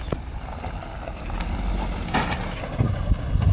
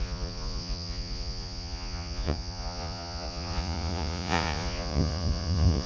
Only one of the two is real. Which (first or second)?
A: first